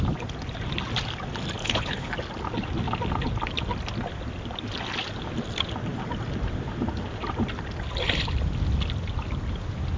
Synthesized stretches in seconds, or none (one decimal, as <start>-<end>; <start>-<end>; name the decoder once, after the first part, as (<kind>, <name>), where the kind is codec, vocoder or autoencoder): 1.6-2.1 (codec, HILCodec)